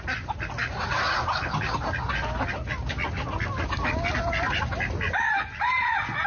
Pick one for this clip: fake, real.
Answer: real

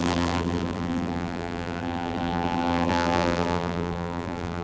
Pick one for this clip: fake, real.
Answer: fake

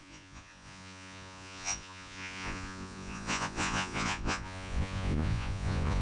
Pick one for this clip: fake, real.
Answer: fake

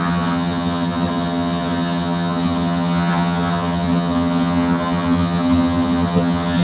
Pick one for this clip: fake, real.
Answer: fake